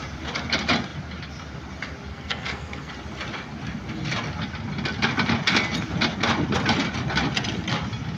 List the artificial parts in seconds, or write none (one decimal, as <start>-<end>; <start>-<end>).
2.1-2.9